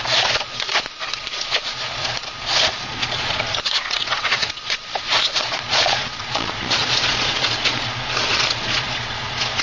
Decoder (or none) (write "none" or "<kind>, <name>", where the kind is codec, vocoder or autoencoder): vocoder, Vocos